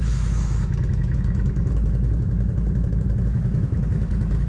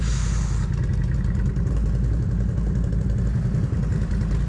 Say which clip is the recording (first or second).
second